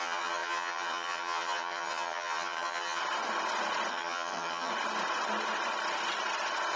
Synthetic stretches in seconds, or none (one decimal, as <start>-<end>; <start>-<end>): 0.0-3.0; 3.9-4.7